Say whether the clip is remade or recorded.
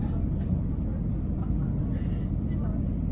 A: recorded